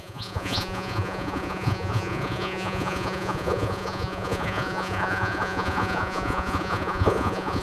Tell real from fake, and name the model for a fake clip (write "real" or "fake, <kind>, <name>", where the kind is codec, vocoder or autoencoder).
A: fake, vocoder, Vocos